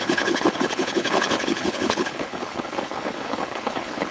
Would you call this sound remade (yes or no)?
yes